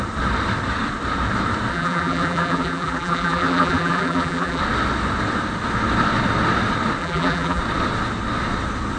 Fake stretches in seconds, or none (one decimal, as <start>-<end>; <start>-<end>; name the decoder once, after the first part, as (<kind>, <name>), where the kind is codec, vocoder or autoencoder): 1.7-4.6 (vocoder, BigVGAN v2); 7.0-7.6